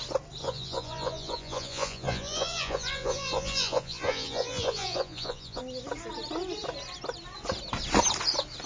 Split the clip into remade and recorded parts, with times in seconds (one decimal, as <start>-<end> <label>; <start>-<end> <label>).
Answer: 0.0-0.4 recorded; 0.4-5.6 remade; 5.6-8.7 recorded